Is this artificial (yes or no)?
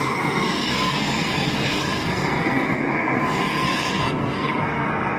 yes